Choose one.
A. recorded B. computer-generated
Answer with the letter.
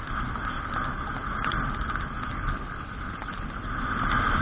A